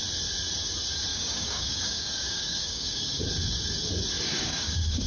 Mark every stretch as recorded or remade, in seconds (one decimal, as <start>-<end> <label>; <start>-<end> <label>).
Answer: 0.0-1.1 recorded; 1.1-3.2 remade; 3.2-4.3 recorded; 4.3-5.1 remade